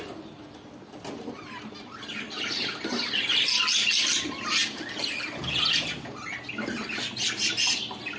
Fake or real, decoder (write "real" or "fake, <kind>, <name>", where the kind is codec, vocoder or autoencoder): real